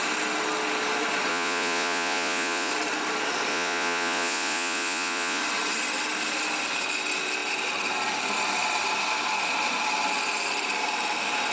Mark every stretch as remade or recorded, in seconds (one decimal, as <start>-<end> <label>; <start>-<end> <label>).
0.0-1.3 recorded; 1.3-2.7 remade; 2.7-3.5 recorded; 3.5-5.4 remade; 5.4-11.5 recorded